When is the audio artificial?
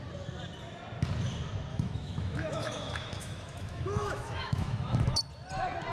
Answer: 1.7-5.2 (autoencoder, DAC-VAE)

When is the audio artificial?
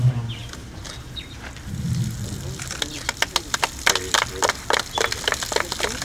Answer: none